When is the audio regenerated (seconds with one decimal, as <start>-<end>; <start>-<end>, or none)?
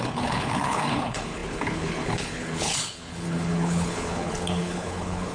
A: 0.0-5.3